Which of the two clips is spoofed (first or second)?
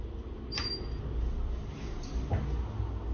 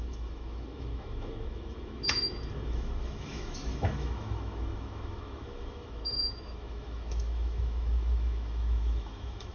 second